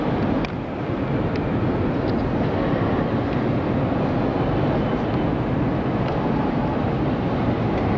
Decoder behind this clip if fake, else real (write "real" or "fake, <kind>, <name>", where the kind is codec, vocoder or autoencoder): real